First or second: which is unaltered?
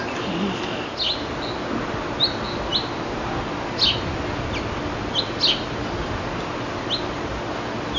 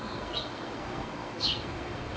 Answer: first